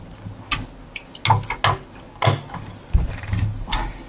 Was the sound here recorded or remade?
recorded